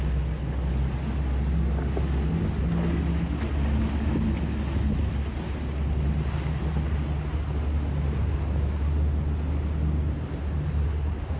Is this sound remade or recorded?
recorded